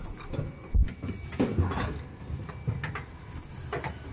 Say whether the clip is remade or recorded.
recorded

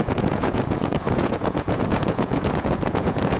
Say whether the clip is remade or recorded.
remade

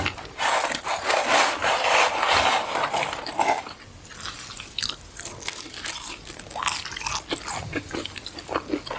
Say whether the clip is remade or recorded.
recorded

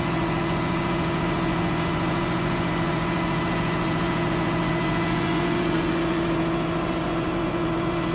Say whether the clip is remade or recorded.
remade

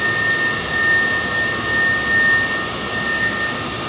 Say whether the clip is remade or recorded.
recorded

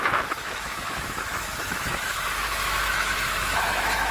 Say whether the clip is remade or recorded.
remade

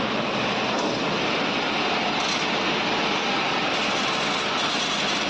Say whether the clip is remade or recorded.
recorded